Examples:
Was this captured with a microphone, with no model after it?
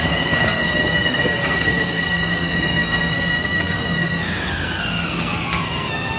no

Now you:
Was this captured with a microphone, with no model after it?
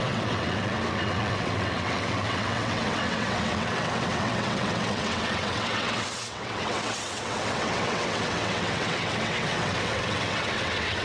no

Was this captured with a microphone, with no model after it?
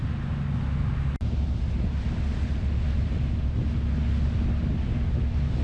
yes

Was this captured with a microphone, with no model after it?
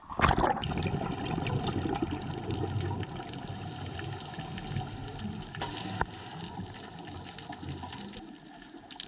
yes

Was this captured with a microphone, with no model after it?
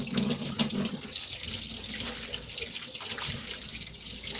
yes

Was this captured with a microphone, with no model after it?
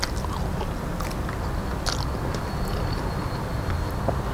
yes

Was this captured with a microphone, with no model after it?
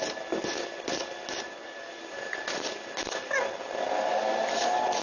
yes